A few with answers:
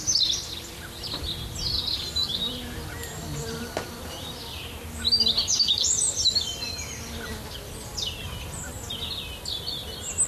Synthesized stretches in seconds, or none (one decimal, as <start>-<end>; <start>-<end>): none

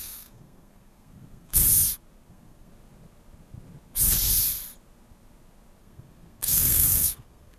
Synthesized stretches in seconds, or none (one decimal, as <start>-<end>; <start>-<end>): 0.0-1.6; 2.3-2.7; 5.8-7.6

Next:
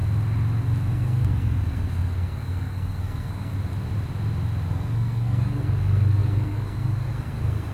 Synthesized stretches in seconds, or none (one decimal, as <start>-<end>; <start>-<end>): 0.9-3.5; 4.7-7.7

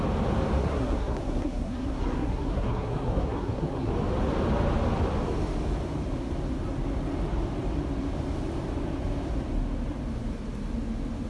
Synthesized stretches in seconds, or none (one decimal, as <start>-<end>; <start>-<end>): 0.6-3.9